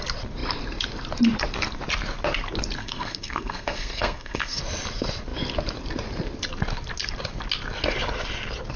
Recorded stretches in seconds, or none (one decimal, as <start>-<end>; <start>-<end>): 0.0-2.8; 4.6-8.8